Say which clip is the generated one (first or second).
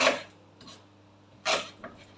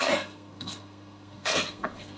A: second